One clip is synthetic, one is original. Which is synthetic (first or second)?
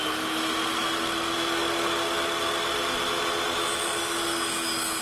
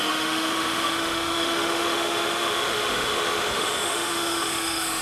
second